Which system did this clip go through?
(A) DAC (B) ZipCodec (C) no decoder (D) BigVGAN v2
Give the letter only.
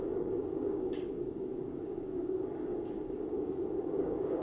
A